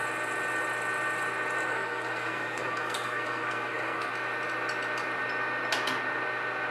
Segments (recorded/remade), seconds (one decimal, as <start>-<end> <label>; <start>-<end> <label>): 0.0-1.7 recorded; 1.7-4.1 remade; 4.1-6.7 recorded